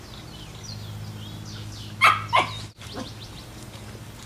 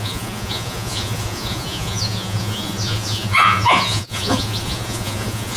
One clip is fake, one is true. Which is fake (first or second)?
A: second